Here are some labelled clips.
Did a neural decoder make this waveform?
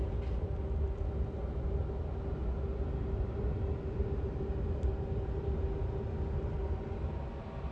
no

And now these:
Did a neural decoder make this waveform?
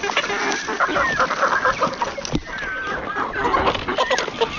no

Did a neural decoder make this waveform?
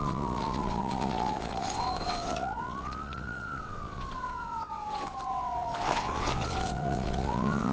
yes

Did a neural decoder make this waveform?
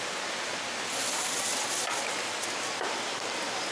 no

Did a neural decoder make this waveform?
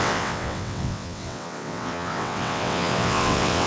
yes